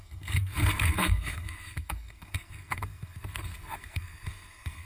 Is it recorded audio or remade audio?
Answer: remade